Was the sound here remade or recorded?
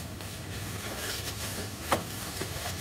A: remade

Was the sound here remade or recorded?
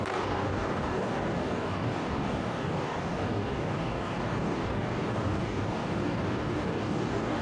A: remade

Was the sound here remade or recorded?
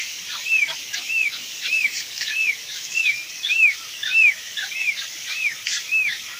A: remade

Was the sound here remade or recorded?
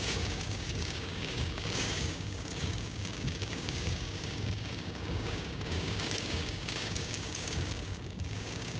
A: remade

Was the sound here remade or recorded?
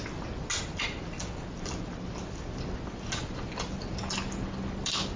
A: recorded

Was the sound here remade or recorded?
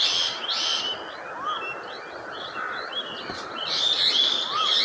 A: recorded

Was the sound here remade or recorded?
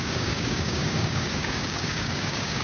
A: remade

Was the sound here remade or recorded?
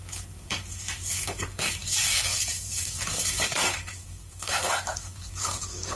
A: remade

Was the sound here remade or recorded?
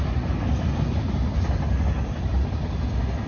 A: recorded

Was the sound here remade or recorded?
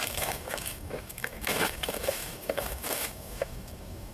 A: remade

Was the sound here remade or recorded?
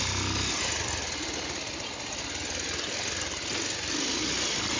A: recorded